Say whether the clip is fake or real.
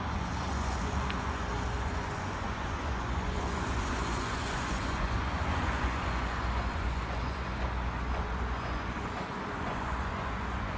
fake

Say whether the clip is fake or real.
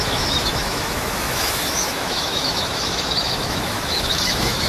fake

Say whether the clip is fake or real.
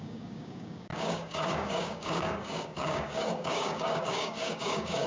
fake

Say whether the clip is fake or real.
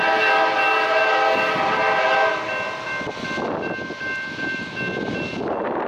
real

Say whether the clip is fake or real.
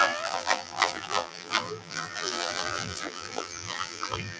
fake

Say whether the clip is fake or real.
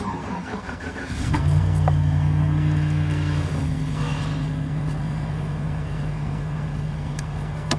fake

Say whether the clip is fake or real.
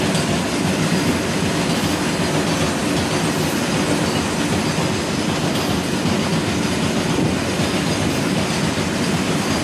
real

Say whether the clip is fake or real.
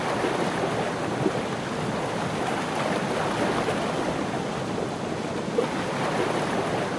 real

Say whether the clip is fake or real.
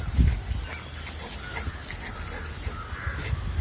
real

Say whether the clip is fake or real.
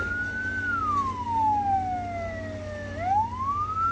real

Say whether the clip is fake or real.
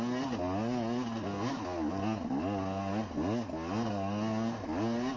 real